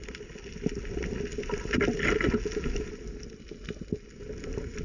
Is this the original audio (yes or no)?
yes